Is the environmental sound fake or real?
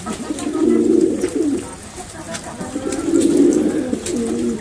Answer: real